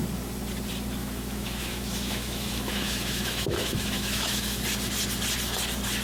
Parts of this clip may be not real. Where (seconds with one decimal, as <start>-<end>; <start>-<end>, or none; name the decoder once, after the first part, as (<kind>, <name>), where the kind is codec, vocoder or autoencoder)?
1.0-4.6 (autoencoder, DAC-VAE)